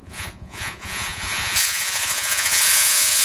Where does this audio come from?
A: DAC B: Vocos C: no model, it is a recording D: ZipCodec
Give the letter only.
B